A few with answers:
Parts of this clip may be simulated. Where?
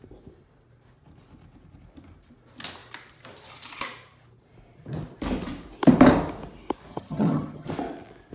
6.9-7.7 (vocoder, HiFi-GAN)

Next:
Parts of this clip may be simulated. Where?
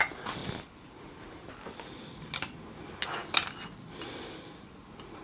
none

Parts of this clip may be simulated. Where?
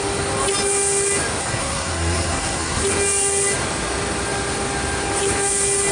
1.4-2.8 (codec, SNAC)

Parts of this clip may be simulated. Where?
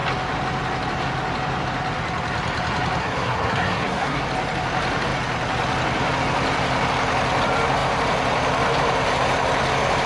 3.0-4.2 (codec, SNAC)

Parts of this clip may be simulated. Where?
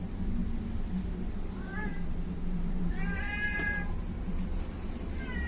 0.0-0.4 (vocoder, BigVGAN v2); 0.9-5.5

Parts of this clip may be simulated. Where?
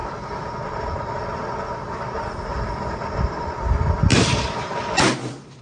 0.0-1.2 (vocoder, BigVGAN v2); 2.5-3.5; 4.1-5.6